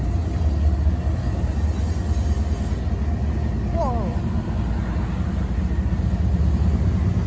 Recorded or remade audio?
recorded